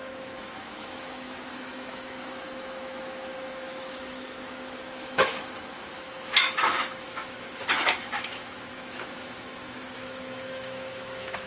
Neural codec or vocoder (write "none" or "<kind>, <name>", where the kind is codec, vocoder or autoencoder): autoencoder, DAC-VAE